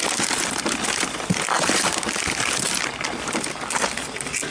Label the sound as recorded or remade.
recorded